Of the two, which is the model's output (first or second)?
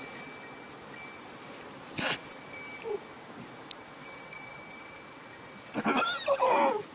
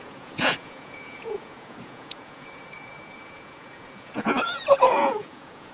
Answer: second